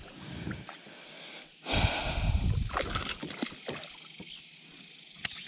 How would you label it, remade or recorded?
recorded